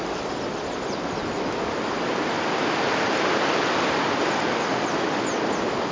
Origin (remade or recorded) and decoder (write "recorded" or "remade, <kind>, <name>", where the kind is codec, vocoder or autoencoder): recorded